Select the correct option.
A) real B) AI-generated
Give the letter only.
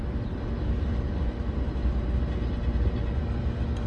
A